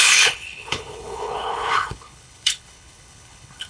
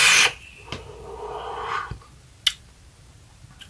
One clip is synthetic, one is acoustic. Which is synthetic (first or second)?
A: first